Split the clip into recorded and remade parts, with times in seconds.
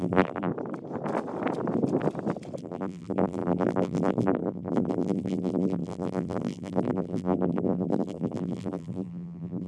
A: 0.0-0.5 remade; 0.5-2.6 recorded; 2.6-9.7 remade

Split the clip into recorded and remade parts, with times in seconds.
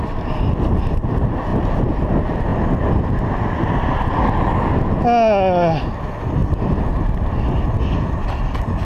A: 0.0-8.8 recorded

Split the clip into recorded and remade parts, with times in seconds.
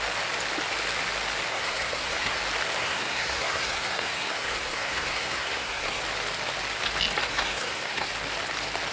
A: 0.0-1.5 recorded; 1.5-2.4 remade; 2.4-2.8 recorded; 2.8-6.0 remade; 6.0-7.3 recorded; 7.3-8.1 remade; 8.1-8.9 recorded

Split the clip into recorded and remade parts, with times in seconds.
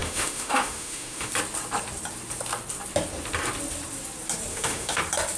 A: 0.0-1.3 remade; 1.3-4.5 recorded; 4.5-5.0 remade; 5.0-5.4 recorded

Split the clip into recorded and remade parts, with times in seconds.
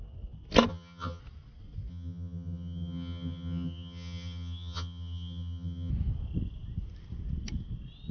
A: 0.0-0.7 recorded; 0.7-1.2 remade; 1.2-1.9 recorded; 1.9-5.9 remade; 5.9-8.1 recorded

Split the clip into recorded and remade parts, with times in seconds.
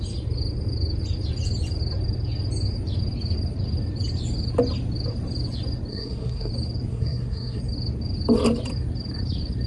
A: 0.0-5.9 recorded; 5.9-6.5 remade; 6.5-6.9 recorded; 6.9-7.6 remade; 7.6-9.7 recorded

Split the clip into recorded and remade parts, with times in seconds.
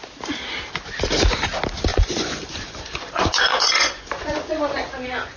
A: 0.0-1.9 recorded; 1.9-5.4 remade